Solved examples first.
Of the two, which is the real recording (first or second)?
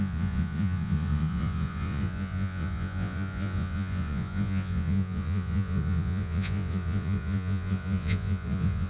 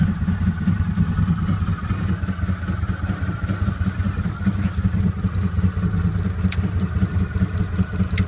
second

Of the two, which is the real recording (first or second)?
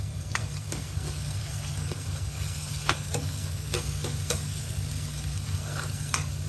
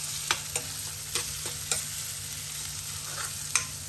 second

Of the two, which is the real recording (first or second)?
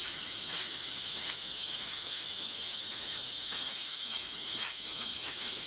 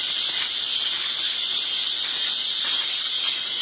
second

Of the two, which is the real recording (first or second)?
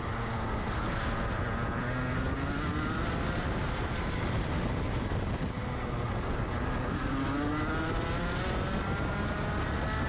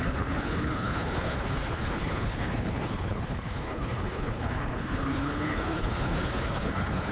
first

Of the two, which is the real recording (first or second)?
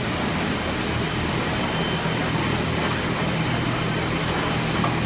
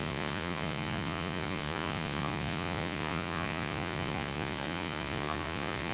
first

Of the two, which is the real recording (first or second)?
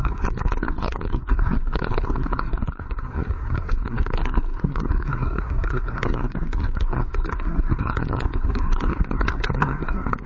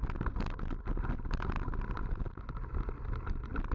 second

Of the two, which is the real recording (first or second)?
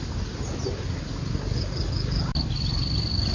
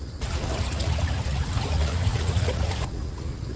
first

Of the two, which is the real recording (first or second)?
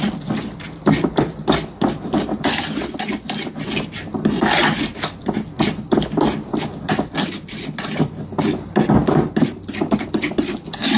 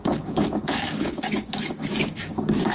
first